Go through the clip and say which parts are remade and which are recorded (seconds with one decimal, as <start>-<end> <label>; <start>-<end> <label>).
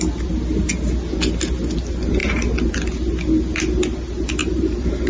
0.0-4.4 recorded; 4.4-5.1 remade